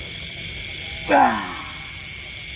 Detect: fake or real real